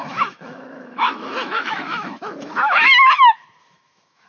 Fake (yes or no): yes